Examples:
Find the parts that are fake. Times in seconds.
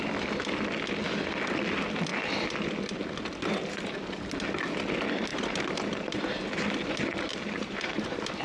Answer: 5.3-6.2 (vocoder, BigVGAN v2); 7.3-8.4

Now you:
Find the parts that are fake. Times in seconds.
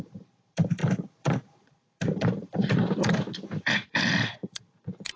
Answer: 0.0-0.8 (vocoder, BigVGAN v2); 1.4-5.2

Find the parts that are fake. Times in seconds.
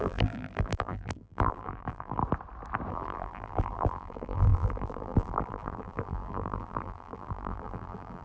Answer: 0.0-2.2 (vocoder, BigVGAN v2); 2.9-8.2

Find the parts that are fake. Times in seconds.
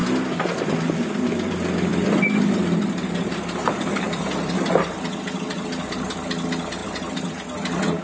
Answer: 1.9-6.1 (vocoder, BigVGAN v2); 6.8-7.3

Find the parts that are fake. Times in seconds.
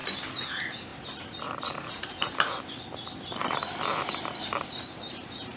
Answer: 0.9-2.6 (vocoder, BigVGAN v2); 3.4-5.6